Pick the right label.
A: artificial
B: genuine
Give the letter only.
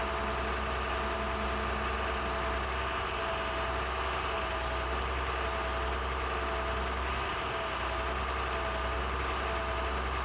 B